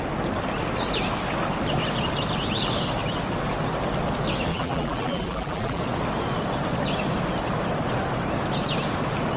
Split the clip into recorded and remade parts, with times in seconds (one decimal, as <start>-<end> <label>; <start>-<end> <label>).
0.0-4.5 recorded; 4.5-5.8 remade; 5.8-9.4 recorded